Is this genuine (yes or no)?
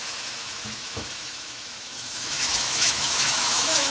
no